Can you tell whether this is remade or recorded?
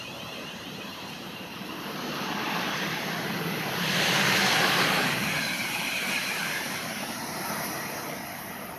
remade